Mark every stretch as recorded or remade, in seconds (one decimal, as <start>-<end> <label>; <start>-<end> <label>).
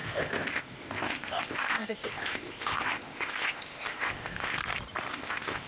0.0-4.6 remade; 4.6-5.1 recorded; 5.1-5.7 remade